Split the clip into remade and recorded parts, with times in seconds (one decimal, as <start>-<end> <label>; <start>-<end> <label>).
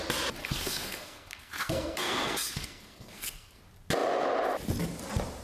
0.0-0.4 recorded; 0.4-3.6 remade; 3.6-5.4 recorded